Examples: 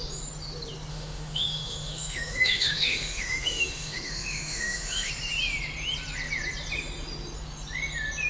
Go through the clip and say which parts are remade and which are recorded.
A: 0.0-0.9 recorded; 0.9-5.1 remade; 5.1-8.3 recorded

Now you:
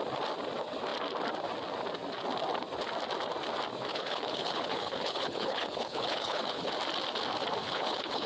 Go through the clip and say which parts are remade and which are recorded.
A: 0.0-3.9 recorded; 3.9-6.7 remade; 6.7-7.6 recorded; 7.6-8.3 remade

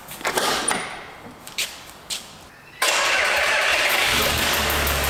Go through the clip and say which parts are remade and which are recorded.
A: 0.0-0.6 remade; 0.6-1.4 recorded; 1.4-2.3 remade; 2.3-3.9 recorded; 3.9-5.1 remade

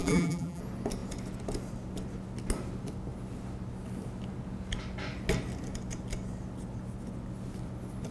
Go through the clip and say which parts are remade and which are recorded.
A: 0.0-0.6 remade; 0.6-8.1 recorded